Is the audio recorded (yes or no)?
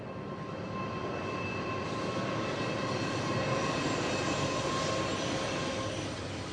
yes